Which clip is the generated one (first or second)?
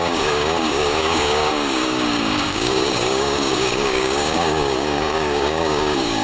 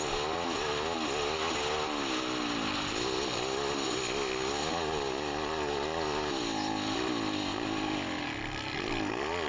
first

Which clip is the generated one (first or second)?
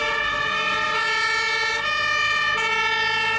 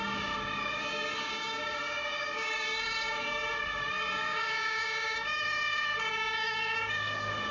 second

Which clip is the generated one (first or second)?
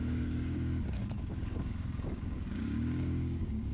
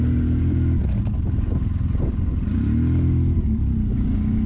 first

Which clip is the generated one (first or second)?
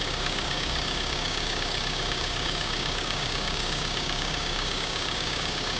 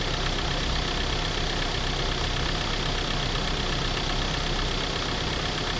first